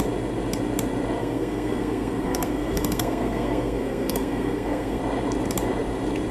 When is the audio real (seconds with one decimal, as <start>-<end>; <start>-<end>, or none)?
0.0-1.2; 5.0-6.3